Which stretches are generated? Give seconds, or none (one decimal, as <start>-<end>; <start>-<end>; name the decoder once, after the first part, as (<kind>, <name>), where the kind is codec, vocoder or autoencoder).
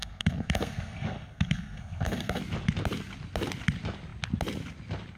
0.0-2.4 (codec, SNAC)